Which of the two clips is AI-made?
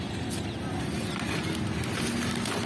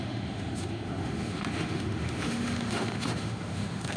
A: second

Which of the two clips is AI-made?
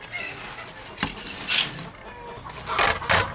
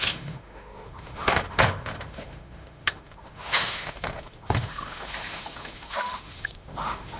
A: second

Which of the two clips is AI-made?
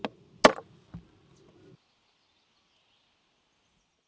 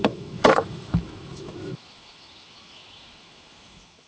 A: second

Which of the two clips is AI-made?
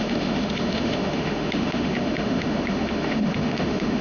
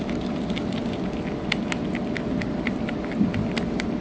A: first